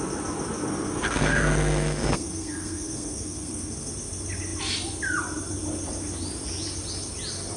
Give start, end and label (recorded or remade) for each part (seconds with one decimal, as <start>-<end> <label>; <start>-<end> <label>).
0.0-0.7 recorded; 0.7-3.9 remade; 3.9-7.6 recorded